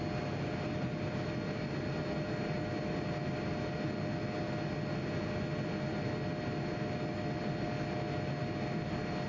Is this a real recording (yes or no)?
yes